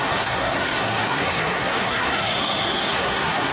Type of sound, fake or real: fake